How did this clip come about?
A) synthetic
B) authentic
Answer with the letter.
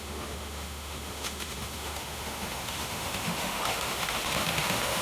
A